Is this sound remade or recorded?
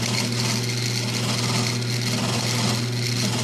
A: recorded